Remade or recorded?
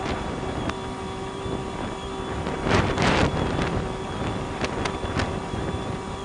recorded